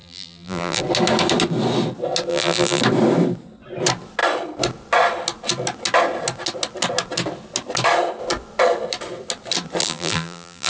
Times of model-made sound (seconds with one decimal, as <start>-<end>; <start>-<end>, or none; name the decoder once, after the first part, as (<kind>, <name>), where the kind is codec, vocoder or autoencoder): 0.0-0.8 (vocoder, BigVGAN v2); 2.3-2.8; 9.8-10.7

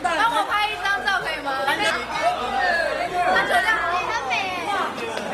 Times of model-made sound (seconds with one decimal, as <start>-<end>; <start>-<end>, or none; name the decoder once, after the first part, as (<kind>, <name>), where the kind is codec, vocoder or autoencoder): none

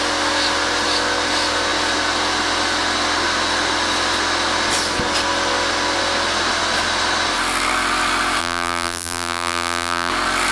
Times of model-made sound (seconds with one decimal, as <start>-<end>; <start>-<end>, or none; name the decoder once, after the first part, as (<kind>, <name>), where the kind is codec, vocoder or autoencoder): 8.4-10.1 (vocoder, BigVGAN v2)

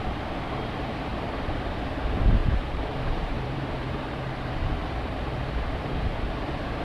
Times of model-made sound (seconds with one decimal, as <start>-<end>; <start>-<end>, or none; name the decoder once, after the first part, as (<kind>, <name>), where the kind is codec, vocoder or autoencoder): 2.4-4.7 (vocoder, BigVGAN v2)

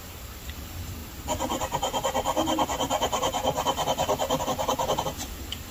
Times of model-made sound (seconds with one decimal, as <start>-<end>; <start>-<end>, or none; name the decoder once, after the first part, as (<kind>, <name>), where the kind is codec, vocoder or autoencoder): none